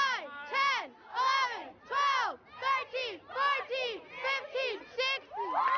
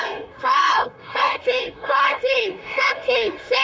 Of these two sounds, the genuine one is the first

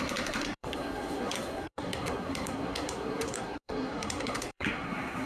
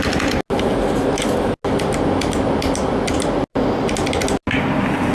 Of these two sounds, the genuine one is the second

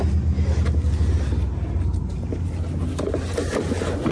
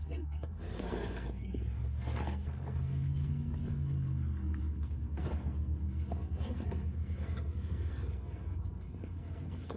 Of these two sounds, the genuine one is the first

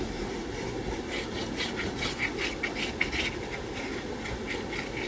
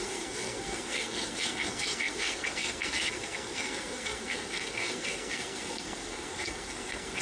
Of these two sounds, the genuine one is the first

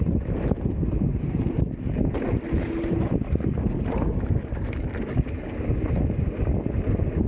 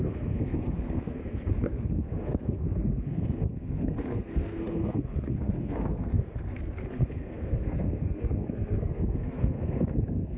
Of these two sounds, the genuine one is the first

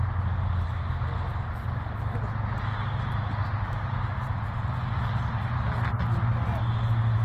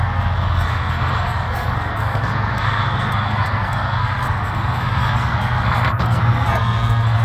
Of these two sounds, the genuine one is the first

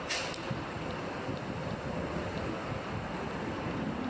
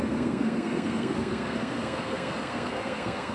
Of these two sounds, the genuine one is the first